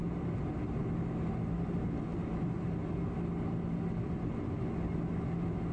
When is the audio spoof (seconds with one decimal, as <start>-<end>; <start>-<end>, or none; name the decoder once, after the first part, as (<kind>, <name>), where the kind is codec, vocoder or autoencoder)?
none

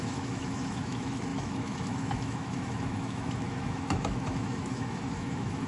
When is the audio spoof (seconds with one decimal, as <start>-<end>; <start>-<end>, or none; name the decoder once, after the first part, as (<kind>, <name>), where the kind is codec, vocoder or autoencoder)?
0.0-5.7 (autoencoder, DAC-VAE)

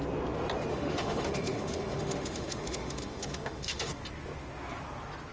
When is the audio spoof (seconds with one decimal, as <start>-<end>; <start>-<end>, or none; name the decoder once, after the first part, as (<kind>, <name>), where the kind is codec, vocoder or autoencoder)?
0.7-3.9 (autoencoder, DAC-VAE)

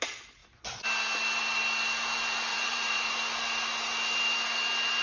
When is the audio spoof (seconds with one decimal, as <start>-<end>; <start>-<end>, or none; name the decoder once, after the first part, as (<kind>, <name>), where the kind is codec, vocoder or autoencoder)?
2.5-3.1 (vocoder, Vocos)

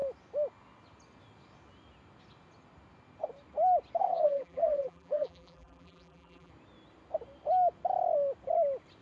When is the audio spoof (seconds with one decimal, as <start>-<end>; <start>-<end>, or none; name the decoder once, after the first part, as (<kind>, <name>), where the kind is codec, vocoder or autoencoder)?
4.0-6.5 (vocoder, BigVGAN v2)

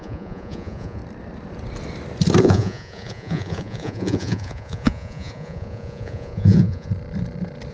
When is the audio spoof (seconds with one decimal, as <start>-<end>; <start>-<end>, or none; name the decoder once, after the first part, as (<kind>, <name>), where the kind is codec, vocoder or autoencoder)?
0.0-1.0 (vocoder, Vocos); 2.4-6.9